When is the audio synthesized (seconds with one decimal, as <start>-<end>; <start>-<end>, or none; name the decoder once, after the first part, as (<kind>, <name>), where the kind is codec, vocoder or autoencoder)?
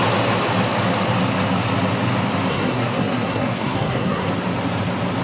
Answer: 2.5-4.3 (codec, SNAC)